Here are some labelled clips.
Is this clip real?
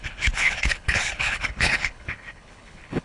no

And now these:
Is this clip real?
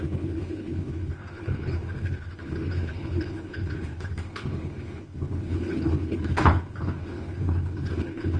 no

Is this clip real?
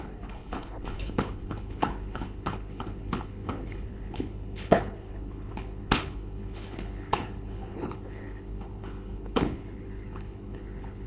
no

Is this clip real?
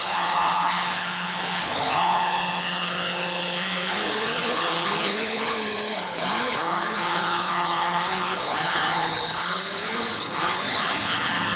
no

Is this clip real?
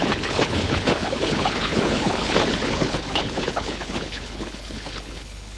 no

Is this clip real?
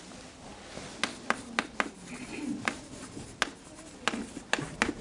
yes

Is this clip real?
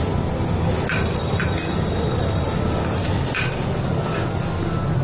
yes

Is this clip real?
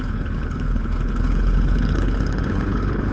no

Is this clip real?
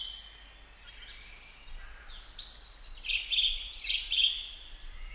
yes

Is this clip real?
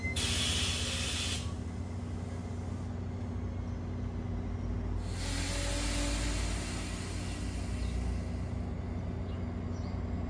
yes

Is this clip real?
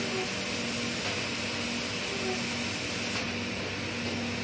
yes